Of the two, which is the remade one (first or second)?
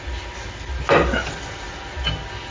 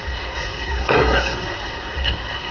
second